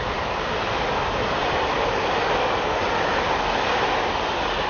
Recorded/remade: recorded